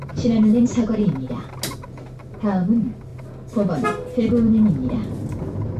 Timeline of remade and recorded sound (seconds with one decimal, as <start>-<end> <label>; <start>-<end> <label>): 0.0-0.7 recorded; 0.7-1.3 remade; 1.3-5.8 recorded